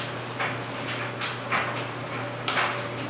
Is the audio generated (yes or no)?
no